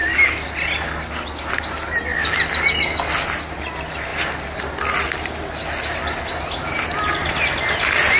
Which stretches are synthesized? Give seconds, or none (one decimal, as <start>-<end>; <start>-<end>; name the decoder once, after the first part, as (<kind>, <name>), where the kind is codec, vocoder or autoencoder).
none